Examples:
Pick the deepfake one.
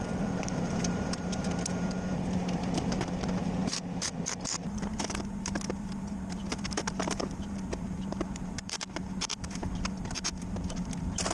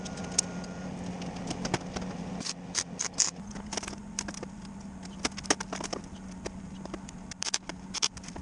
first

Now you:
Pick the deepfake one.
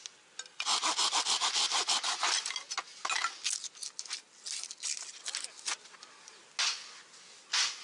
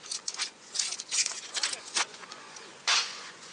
second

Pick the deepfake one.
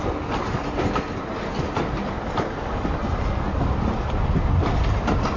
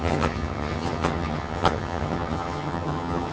second